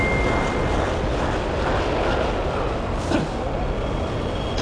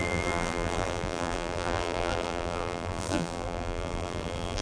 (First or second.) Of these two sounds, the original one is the first